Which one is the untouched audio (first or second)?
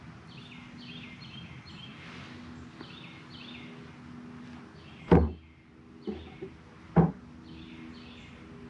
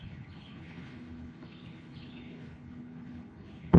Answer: first